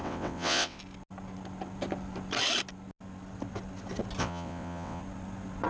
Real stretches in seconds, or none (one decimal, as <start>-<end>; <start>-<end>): 0.8-4.2; 5.0-5.7